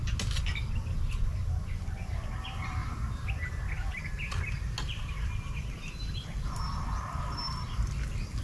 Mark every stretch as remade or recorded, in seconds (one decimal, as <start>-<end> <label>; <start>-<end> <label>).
0.0-8.4 recorded